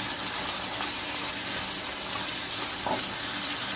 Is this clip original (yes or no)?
yes